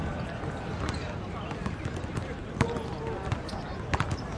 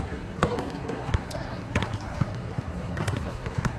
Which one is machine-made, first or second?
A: second